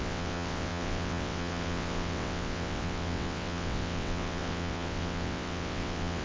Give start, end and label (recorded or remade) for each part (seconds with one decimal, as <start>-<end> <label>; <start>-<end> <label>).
0.0-6.2 remade